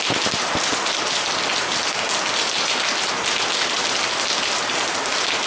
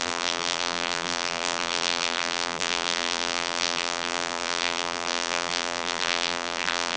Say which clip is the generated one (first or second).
second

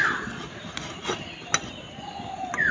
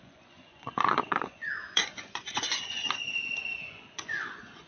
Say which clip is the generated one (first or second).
second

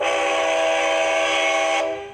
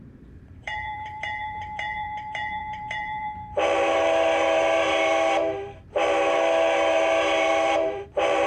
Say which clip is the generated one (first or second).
second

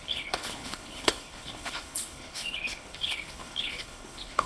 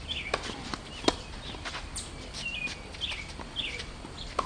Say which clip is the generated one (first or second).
first